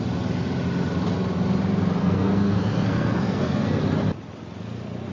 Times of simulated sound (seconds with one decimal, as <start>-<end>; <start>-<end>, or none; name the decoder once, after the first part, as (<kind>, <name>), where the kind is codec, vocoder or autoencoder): 2.0-3.8 (codec, SNAC)